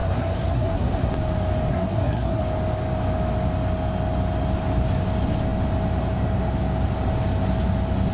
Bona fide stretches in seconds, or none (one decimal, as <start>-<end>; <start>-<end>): 1.1-1.7; 2.4-8.1